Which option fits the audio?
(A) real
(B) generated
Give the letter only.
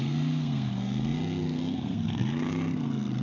B